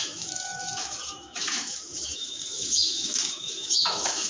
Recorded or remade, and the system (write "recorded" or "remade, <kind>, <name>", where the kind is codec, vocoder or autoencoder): remade, autoencoder, DAC-VAE